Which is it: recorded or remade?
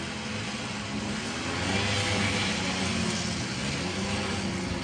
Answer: recorded